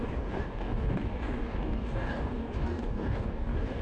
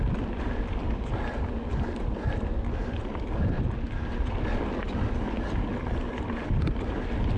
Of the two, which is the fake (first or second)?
first